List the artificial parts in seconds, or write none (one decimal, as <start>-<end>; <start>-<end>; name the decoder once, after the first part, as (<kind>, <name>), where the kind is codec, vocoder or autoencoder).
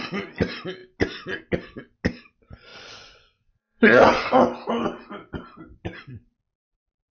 2.7-4.3 (vocoder, Vocos)